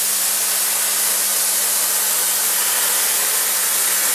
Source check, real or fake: real